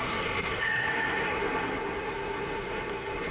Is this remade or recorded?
remade